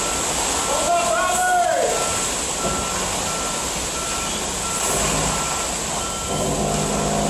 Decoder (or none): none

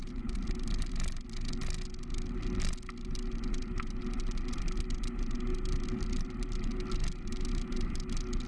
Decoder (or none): none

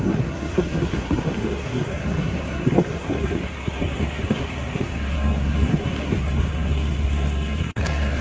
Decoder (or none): codec, SNAC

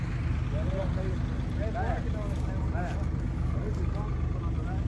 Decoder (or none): none